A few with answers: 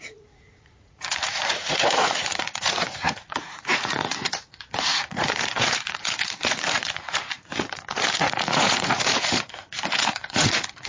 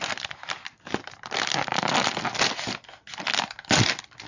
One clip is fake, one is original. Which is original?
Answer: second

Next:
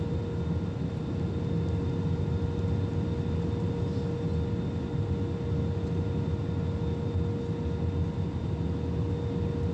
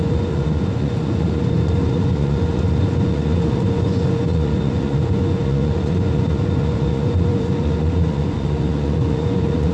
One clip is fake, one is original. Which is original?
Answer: first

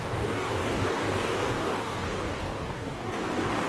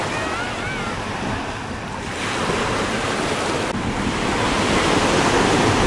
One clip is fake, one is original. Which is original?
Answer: second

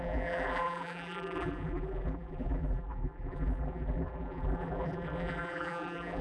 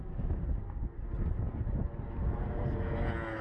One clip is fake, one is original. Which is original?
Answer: second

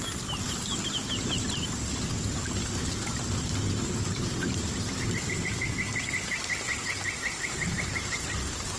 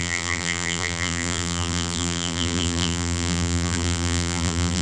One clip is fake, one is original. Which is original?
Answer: first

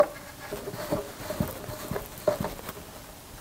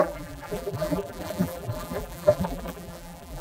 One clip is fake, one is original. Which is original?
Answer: first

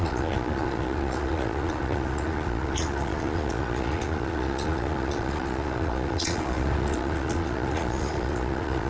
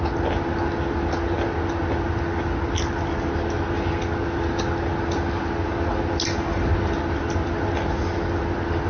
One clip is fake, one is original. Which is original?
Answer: second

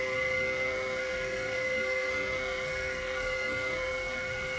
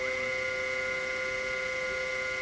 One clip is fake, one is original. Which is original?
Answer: second